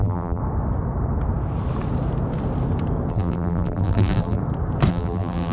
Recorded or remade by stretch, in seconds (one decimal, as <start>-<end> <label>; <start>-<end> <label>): 0.0-0.4 remade; 0.4-3.1 recorded; 3.1-4.4 remade; 4.4-4.9 recorded; 4.9-5.5 remade